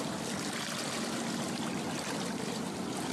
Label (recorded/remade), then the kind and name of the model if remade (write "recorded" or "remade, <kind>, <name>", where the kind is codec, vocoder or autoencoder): recorded